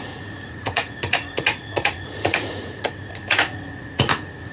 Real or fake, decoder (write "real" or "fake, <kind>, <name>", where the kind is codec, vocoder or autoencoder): fake, vocoder, Vocos